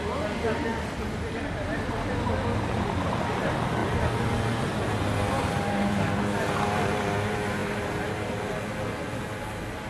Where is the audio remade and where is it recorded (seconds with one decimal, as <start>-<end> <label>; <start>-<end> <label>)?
0.0-0.7 recorded; 0.7-2.4 remade; 2.4-9.9 recorded